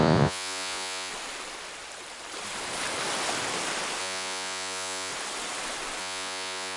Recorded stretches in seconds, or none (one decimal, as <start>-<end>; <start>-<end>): 1.1-4.0; 5.1-6.0